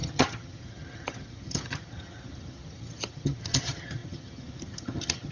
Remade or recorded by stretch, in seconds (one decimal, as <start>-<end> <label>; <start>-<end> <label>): 0.0-5.3 remade